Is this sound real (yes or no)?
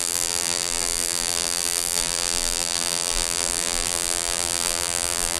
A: no